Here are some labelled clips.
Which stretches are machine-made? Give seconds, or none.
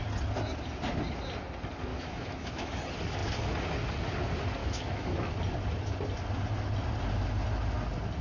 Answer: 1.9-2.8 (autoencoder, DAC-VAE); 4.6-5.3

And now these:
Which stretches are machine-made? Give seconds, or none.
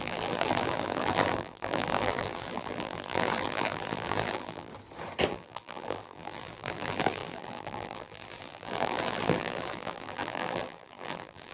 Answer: 0.0-4.7 (vocoder, BigVGAN v2); 5.3-11.5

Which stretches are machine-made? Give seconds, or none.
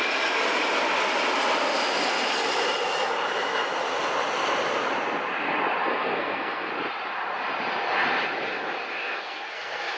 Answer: 5.9-6.7 (codec, SNAC); 9.0-10.0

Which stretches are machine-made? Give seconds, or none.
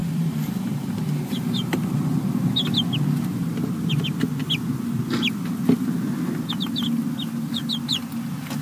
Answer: 0.0-1.8 (vocoder, BigVGAN v2)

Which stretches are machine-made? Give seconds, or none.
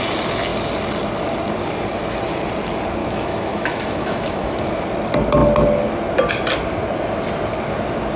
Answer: 3.0-4.8 (autoencoder, DAC-VAE)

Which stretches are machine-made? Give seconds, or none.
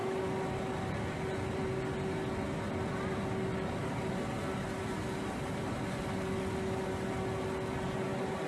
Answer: none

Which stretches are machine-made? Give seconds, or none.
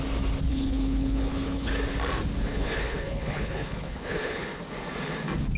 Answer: 0.5-1.7 (codec, HILCodec); 2.5-4.6